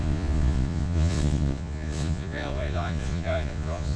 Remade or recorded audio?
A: remade